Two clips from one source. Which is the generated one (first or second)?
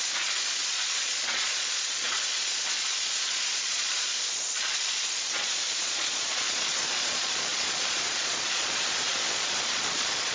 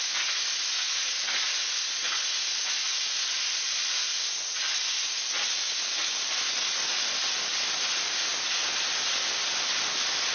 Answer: first